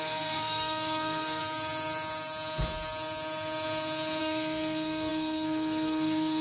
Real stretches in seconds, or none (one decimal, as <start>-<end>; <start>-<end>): 1.4-4.2